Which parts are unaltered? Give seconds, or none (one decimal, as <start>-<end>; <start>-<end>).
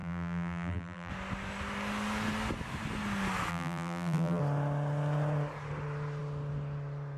1.1-3.5; 4.4-7.2